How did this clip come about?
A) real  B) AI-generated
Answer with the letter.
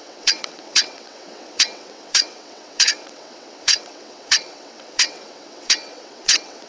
B